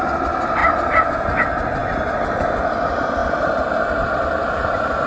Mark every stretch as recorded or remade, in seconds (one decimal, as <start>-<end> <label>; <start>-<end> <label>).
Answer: 0.0-5.1 recorded